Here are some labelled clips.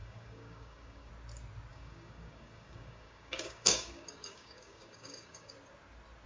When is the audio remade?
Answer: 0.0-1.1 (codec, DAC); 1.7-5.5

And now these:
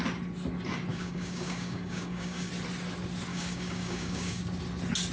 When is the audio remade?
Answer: 0.9-2.5 (codec, DAC); 3.3-4.4

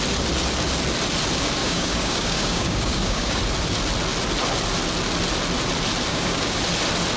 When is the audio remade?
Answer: 1.6-3.4 (codec, DAC); 6.1-6.6

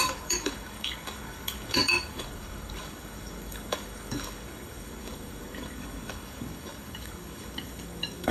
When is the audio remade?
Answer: 0.0-8.3 (codec, DAC)

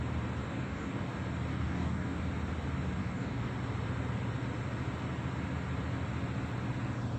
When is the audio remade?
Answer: 0.4-1.1 (codec, DAC); 1.5-2.2; 3.0-3.5

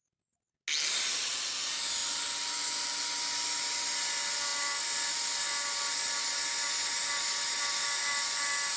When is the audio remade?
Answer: none